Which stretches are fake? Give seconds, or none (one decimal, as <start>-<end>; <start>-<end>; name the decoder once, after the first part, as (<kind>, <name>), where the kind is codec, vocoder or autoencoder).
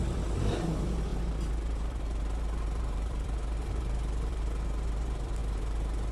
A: 0.0-6.1 (vocoder, BigVGAN v2)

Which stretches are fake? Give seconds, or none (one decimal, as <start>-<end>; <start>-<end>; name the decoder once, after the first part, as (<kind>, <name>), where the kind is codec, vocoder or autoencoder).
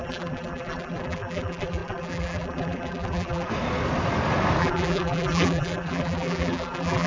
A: 0.0-3.5 (vocoder, BigVGAN v2); 4.6-7.1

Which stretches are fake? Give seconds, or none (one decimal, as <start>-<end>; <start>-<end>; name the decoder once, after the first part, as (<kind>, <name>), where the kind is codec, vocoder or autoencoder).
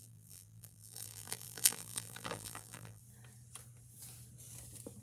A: 0.0-3.0 (vocoder, BigVGAN v2)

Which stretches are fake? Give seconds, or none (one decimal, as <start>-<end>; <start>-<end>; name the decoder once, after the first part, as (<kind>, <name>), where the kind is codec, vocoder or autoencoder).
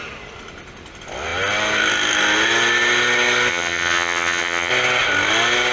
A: 3.5-4.7 (vocoder, HiFi-GAN)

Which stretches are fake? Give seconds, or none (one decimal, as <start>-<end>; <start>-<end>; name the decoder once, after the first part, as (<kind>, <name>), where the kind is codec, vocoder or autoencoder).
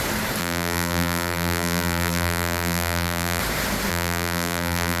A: 0.4-3.4 (vocoder, BigVGAN v2); 3.9-5.0